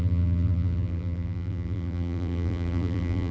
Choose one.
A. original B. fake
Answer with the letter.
B